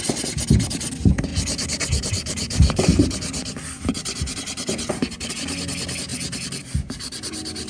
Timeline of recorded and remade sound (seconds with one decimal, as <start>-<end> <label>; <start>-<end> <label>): 0.0-1.3 recorded; 1.3-5.3 remade; 5.3-6.1 recorded; 6.1-7.7 remade